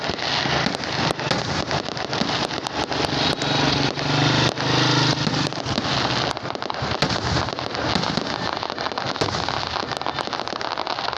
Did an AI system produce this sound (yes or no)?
no